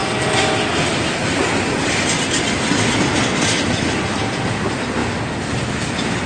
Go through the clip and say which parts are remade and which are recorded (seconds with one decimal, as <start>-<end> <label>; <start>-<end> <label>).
0.0-6.3 recorded